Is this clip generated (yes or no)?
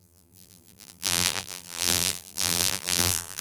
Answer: yes